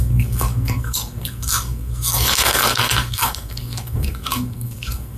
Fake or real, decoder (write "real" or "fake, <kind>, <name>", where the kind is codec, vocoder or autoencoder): fake, codec, SNAC